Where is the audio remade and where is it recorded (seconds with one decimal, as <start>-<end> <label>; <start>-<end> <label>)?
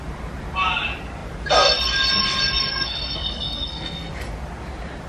0.0-2.7 recorded; 2.7-4.1 remade; 4.1-5.1 recorded